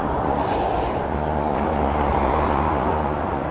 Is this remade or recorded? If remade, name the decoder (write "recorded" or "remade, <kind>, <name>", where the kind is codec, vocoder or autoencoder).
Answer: remade, vocoder, Vocos